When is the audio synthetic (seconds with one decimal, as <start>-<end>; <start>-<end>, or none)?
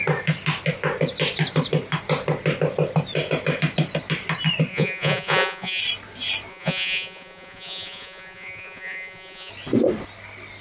4.7-5.8; 6.5-9.5